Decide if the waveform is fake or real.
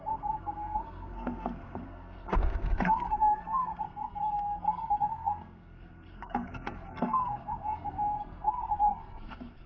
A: fake